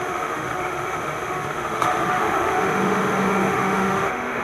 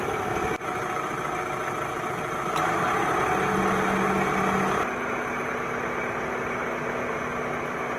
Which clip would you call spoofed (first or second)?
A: first